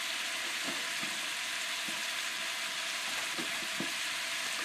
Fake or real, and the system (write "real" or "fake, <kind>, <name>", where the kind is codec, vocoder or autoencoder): real